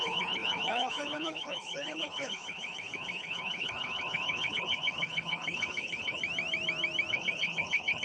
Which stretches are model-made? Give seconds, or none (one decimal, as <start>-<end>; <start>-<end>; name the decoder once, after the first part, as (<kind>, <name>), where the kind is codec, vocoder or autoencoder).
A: 0.0-6.2 (codec, HILCodec); 7.1-8.0

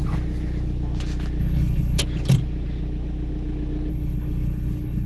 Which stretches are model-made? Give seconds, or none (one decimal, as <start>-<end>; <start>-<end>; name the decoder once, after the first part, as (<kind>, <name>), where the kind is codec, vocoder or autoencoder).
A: 1.4-2.0 (codec, HILCodec); 3.9-5.1

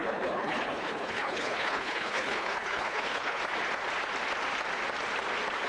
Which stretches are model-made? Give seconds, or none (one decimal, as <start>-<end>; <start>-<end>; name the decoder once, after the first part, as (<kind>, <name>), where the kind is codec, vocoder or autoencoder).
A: 0.0-3.4 (codec, HILCodec)

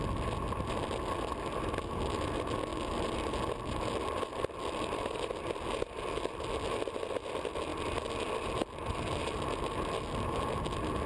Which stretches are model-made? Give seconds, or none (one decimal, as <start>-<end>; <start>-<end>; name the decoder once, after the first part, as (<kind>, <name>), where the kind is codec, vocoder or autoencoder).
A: none